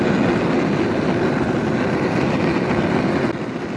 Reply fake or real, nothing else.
real